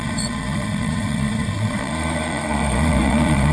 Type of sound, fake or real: fake